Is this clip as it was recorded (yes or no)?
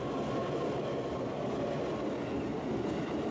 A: yes